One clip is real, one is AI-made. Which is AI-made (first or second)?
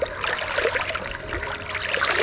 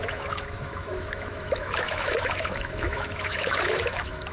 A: second